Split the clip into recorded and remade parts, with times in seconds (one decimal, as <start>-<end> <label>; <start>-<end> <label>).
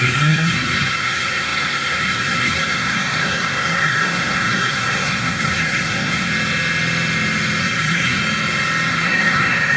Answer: 0.0-6.3 remade; 6.3-7.6 recorded; 7.6-8.2 remade; 8.2-8.9 recorded; 8.9-9.8 remade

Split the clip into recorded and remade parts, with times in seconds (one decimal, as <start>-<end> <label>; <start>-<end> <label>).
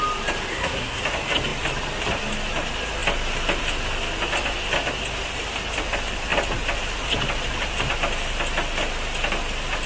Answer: 0.0-0.5 recorded; 0.5-1.0 remade; 1.0-9.9 recorded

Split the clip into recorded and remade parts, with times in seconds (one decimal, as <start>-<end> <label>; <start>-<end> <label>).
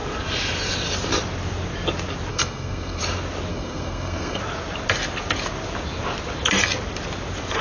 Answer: 0.0-2.3 recorded; 2.3-3.0 remade; 3.0-3.5 recorded; 3.5-4.4 remade; 4.4-7.6 recorded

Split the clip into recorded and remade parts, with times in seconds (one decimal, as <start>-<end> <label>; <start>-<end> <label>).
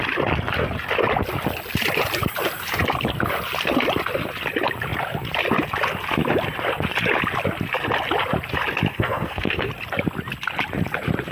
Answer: 0.0-8.9 recorded; 8.9-9.7 remade; 9.7-11.3 recorded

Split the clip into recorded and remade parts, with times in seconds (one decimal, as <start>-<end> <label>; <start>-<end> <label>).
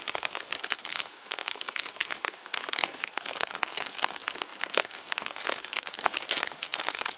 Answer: 0.0-7.2 remade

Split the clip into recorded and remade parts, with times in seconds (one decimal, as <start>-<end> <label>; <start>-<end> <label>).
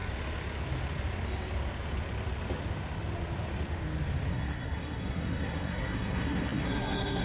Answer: 0.0-4.3 recorded; 4.3-7.2 remade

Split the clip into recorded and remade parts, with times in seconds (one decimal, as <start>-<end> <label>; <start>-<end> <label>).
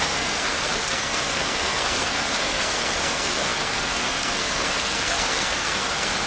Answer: 0.0-6.3 remade